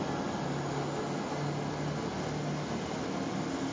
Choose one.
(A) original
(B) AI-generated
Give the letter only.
A